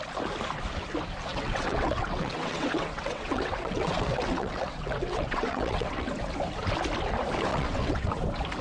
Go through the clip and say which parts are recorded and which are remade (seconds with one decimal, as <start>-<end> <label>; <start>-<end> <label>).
0.0-1.3 recorded; 1.3-6.1 remade; 6.1-7.5 recorded; 7.5-8.1 remade; 8.1-8.6 recorded